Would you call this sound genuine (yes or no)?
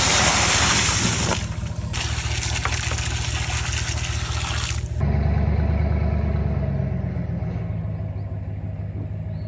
yes